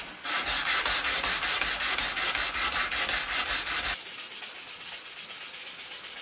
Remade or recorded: recorded